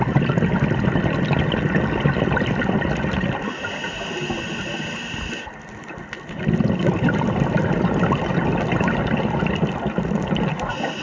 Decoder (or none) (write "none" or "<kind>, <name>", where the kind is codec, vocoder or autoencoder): none